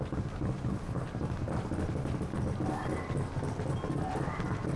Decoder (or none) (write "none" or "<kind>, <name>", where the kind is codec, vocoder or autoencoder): none